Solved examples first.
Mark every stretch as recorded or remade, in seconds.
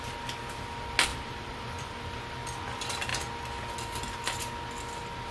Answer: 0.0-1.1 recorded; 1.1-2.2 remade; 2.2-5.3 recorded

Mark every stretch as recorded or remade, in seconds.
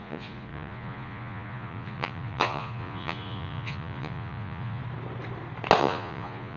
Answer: 0.0-4.8 remade; 4.8-5.8 recorded; 5.8-6.6 remade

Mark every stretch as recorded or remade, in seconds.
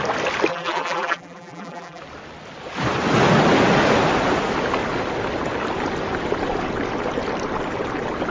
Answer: 0.0-0.5 recorded; 0.5-2.0 remade; 2.0-8.3 recorded